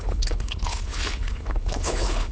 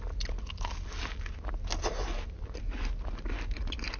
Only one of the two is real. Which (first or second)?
second